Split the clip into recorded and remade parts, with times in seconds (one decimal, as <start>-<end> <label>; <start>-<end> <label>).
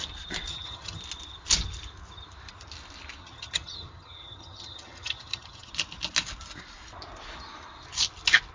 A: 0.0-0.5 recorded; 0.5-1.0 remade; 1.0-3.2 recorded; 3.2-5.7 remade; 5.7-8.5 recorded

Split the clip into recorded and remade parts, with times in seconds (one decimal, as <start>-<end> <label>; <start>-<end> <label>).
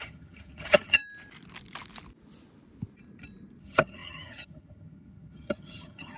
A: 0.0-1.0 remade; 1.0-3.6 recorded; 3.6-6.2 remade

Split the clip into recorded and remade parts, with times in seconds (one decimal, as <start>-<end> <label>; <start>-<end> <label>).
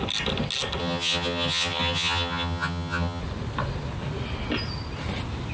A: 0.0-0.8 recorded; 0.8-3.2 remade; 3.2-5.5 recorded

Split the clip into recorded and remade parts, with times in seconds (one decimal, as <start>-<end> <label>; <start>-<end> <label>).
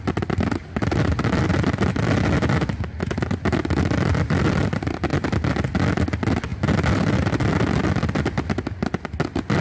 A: 0.0-9.6 recorded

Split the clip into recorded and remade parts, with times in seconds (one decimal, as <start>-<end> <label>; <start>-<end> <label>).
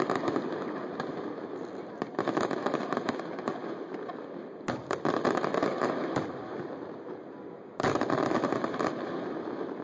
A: 0.0-9.8 recorded